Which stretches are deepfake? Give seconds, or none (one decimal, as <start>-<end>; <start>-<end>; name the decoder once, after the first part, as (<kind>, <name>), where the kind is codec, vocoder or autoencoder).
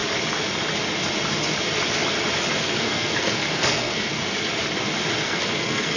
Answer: 2.6-4.2 (codec, SNAC); 5.2-6.0